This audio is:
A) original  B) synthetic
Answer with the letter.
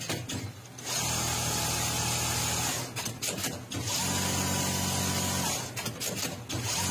A